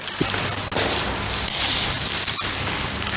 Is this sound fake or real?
real